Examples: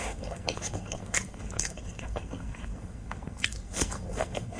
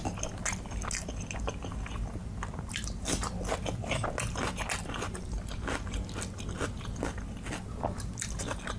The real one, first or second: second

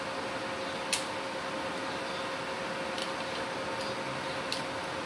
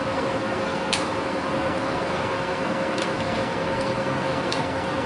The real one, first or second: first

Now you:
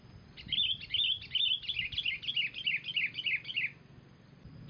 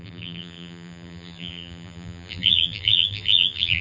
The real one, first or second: first